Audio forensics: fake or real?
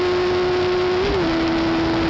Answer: real